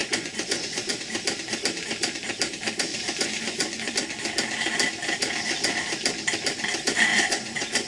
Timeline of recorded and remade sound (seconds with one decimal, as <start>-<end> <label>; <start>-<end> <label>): 0.0-0.9 remade; 0.9-2.9 recorded; 2.9-3.9 remade; 3.9-7.1 recorded; 7.1-7.9 remade